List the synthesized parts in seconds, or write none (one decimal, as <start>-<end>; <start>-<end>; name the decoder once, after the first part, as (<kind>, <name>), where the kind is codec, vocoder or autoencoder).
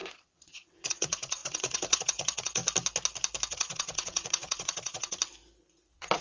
0.0-2.6 (vocoder, WaveNeXt); 3.5-5.2; 5.8-6.2